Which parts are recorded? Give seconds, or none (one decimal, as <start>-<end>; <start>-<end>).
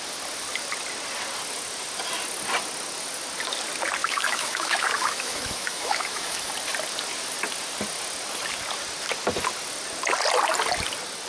0.0-4.0; 6.5-11.3